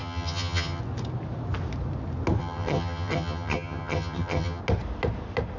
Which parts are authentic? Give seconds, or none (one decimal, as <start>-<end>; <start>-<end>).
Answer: 0.8-2.4; 4.6-5.6